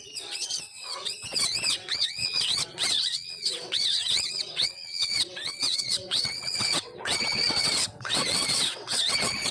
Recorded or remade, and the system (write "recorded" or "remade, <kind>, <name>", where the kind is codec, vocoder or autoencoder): remade, vocoder, WaveNeXt